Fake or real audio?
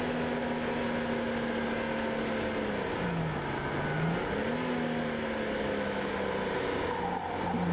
real